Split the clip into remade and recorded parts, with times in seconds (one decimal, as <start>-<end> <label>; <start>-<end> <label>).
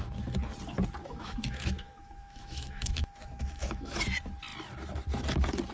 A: 0.0-1.0 recorded; 1.0-4.0 remade; 4.0-5.7 recorded